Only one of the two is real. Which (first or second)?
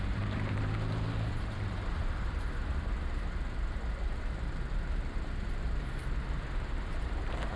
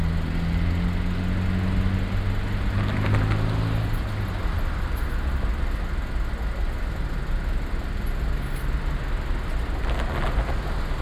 second